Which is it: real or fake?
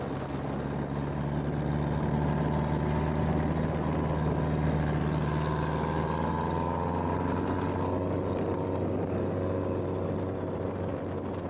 real